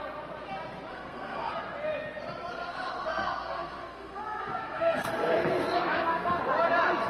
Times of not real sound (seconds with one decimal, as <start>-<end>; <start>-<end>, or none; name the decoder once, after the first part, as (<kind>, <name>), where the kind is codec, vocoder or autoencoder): 0.9-1.5 (codec, SNAC); 2.5-6.4